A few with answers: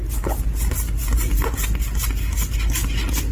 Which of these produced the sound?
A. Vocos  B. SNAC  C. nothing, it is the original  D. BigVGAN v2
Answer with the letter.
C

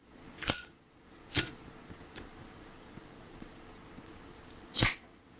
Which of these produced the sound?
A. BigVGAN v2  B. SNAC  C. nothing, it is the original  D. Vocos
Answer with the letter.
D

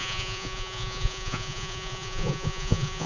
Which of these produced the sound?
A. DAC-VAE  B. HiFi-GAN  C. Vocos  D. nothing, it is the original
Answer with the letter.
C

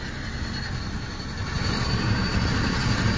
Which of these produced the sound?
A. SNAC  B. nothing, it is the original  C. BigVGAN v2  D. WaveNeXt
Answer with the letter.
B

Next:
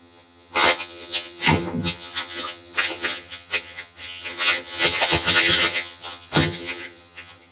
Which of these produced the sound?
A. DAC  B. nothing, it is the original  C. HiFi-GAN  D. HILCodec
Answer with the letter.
C